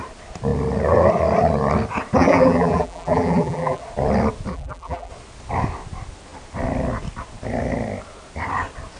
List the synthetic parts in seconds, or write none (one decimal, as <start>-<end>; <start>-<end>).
2.2-3.8; 4.5-5.1